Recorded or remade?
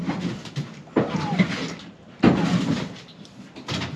recorded